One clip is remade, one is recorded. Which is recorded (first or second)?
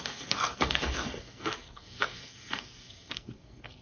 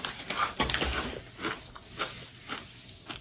second